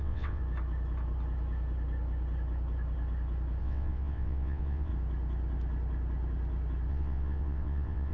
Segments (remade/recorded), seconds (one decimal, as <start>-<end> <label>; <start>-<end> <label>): 0.0-0.4 remade; 0.4-3.6 recorded; 3.6-4.9 remade; 4.9-6.9 recorded; 6.9-8.1 remade